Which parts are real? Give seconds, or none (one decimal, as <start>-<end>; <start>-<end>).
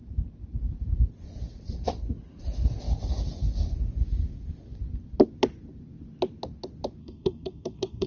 0.0-7.0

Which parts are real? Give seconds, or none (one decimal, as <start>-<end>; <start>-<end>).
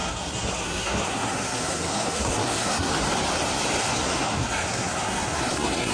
2.9-3.8